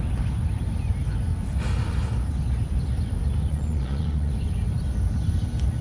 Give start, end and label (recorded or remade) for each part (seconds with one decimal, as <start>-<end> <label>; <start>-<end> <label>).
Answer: 0.0-3.5 recorded; 3.5-4.3 remade; 4.3-5.8 recorded